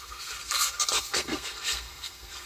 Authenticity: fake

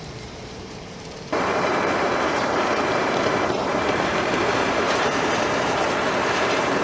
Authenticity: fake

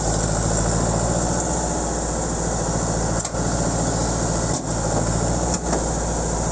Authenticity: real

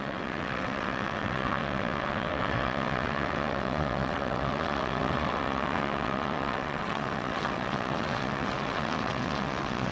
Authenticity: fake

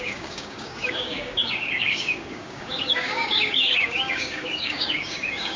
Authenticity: fake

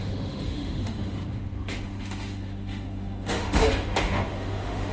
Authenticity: fake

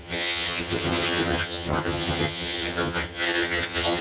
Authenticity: fake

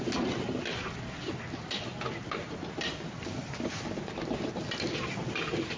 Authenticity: real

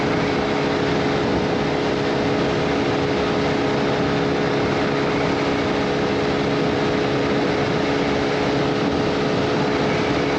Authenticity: real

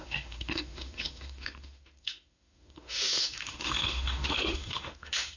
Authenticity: fake